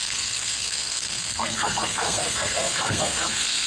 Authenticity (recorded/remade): remade